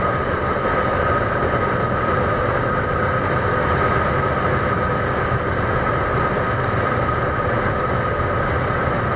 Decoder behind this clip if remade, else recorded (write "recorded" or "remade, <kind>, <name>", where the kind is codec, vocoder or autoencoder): recorded